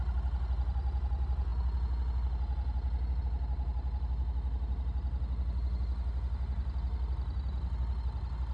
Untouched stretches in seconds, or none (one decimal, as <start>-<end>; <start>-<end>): 0.0-8.5